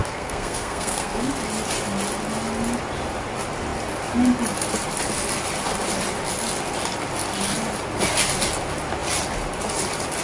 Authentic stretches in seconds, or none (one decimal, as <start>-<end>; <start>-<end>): 1.3-10.2